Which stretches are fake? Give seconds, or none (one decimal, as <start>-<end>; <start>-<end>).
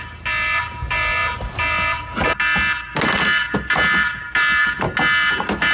none